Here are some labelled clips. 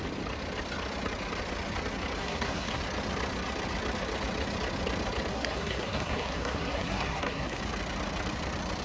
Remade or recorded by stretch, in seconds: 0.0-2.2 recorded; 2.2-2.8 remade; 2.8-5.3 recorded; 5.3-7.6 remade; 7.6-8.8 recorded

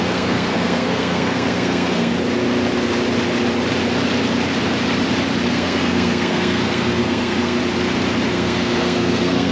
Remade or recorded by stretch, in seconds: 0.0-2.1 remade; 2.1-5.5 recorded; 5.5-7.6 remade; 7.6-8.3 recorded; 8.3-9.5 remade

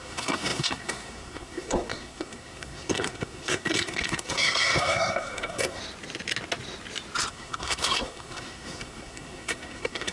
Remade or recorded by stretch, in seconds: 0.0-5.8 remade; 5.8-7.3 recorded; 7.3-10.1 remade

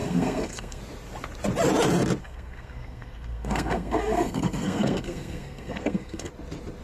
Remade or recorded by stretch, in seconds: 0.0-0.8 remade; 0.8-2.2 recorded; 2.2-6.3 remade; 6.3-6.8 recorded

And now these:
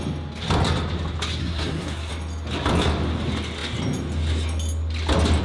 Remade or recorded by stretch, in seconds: 0.0-1.4 recorded; 1.4-2.1 remade; 2.1-5.4 recorded

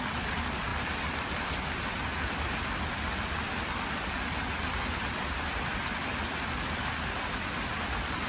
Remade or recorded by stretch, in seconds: 0.0-8.3 recorded

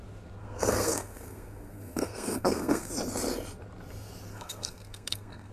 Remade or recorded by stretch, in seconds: 0.0-0.4 recorded; 0.4-2.9 remade; 2.9-4.3 recorded; 4.3-5.5 remade